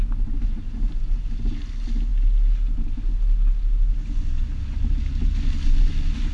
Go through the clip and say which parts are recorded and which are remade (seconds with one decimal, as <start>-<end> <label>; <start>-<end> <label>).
0.0-6.3 recorded